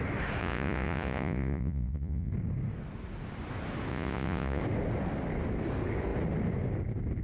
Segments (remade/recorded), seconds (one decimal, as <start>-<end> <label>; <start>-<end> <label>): 0.0-0.4 recorded; 0.4-2.3 remade; 2.3-3.9 recorded; 3.9-4.6 remade; 4.6-7.2 recorded